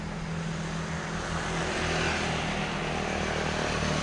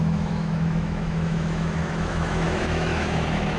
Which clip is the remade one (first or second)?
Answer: second